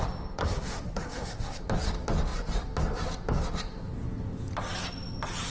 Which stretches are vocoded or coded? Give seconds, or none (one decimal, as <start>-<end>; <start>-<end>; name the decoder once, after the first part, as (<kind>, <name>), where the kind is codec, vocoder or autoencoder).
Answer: 0.4-1.6 (codec, SNAC)